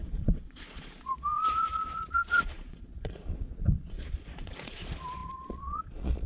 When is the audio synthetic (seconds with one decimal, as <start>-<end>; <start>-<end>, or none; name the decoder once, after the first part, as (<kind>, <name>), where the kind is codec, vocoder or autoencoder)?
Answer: 0.0-6.3 (vocoder, Vocos)